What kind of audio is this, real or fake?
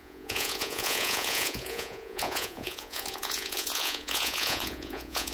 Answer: fake